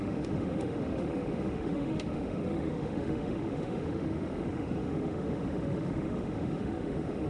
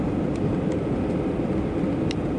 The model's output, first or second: first